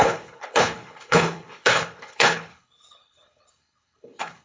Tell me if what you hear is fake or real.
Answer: fake